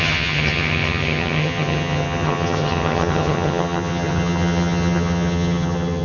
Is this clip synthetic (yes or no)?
yes